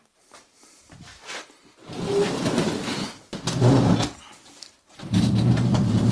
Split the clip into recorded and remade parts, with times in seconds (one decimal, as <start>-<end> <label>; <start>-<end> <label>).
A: 0.0-1.1 remade; 1.1-4.8 recorded; 4.8-6.1 remade